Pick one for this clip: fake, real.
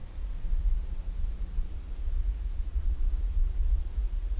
fake